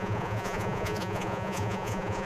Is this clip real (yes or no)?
no